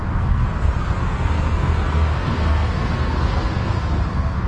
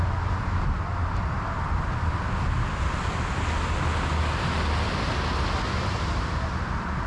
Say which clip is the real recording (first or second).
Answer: second